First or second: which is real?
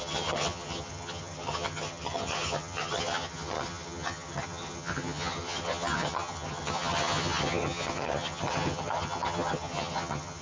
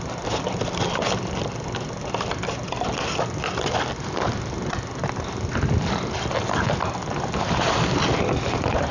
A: second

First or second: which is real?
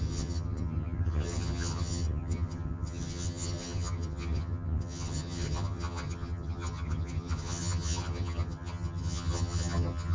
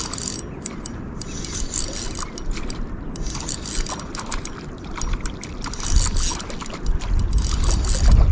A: second